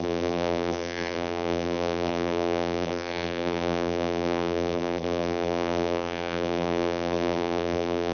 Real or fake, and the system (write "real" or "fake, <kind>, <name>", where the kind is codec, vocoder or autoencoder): fake, vocoder, BigVGAN v2